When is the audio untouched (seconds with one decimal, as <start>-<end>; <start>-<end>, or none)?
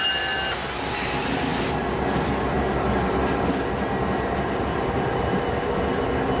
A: 0.0-6.4